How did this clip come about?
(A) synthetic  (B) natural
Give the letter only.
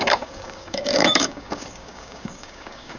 A